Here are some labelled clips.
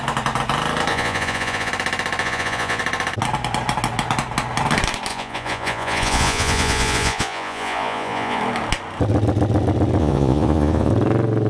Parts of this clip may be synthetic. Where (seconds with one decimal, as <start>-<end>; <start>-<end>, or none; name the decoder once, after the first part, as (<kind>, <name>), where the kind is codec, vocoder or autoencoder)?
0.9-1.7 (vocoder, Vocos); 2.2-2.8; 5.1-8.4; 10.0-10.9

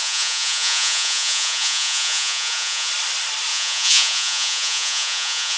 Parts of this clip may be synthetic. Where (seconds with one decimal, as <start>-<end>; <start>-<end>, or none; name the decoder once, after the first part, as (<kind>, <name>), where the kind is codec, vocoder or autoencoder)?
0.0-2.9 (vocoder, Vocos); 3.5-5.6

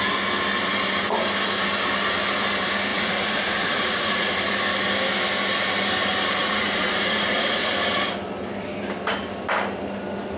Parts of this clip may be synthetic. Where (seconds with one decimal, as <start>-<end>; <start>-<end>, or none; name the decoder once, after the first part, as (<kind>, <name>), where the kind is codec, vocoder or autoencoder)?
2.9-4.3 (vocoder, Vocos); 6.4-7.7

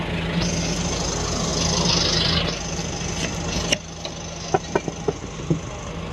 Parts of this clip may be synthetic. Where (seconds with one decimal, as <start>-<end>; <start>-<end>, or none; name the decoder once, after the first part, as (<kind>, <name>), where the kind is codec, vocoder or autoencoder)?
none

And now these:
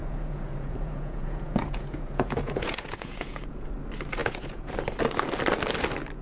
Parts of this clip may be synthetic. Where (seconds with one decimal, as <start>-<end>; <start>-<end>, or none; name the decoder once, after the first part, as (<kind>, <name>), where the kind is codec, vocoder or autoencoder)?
0.0-3.7 (vocoder, Vocos); 4.2-4.7

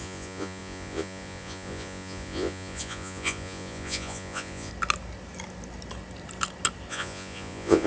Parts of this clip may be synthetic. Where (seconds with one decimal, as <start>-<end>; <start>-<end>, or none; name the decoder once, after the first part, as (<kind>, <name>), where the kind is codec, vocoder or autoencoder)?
0.0-4.7 (vocoder, Vocos); 6.9-7.9